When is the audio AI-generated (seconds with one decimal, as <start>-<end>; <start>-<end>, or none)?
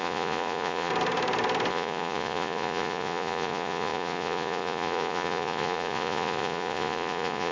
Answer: 0.0-0.9; 1.7-7.5